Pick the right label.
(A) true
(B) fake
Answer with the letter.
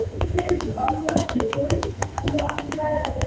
B